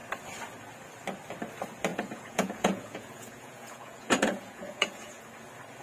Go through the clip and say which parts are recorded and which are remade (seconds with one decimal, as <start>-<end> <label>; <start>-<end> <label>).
0.0-1.9 recorded; 1.9-5.2 remade; 5.2-5.8 recorded